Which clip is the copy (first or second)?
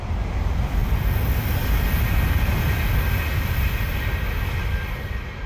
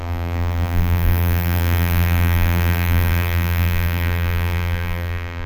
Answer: second